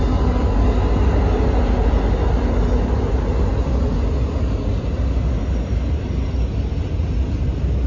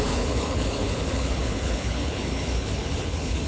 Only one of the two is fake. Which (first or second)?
second